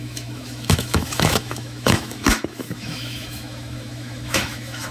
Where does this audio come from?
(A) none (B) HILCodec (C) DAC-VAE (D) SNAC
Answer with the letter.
C